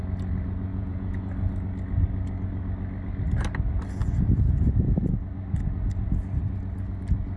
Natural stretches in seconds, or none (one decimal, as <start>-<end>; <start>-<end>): 0.0-0.7; 1.2-7.4